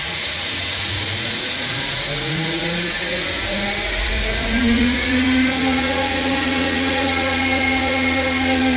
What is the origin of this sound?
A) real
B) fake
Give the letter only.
B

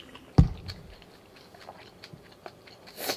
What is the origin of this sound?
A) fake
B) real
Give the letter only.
B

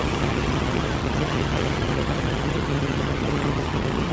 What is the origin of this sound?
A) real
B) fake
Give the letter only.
B